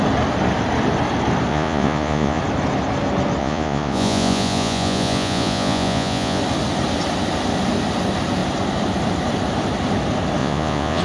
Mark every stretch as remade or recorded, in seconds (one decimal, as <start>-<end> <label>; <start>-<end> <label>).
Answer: 0.0-1.5 recorded; 1.5-2.4 remade; 2.4-3.4 recorded; 3.4-6.4 remade; 6.4-10.4 recorded; 10.4-11.0 remade